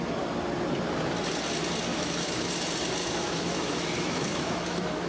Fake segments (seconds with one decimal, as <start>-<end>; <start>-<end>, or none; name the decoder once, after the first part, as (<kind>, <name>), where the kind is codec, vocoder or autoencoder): 1.9-2.5 (autoencoder, DAC-VAE); 3.0-5.1